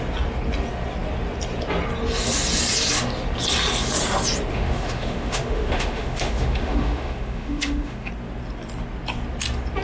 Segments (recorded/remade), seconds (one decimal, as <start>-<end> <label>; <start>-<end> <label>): 0.0-4.5 recorded; 4.5-8.1 remade; 8.1-9.8 recorded